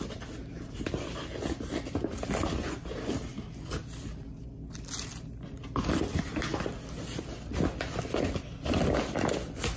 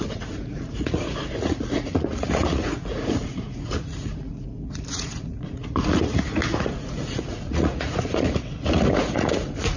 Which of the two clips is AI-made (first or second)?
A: second